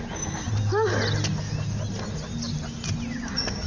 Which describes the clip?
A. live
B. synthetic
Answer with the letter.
A